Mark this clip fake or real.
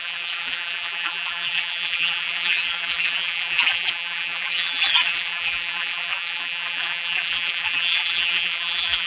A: fake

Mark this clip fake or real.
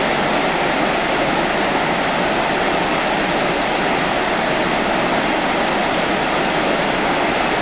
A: real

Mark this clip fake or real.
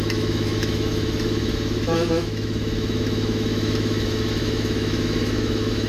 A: fake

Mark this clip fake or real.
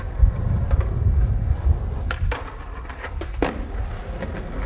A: real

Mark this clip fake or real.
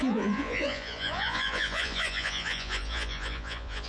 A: fake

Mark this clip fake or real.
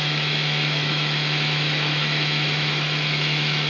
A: fake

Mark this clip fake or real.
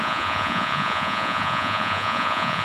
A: fake